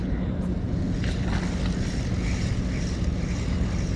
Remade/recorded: recorded